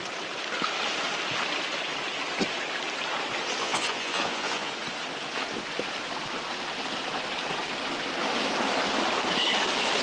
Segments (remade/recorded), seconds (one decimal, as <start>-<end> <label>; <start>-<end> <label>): 0.0-3.6 recorded; 3.6-4.7 remade; 4.7-10.0 recorded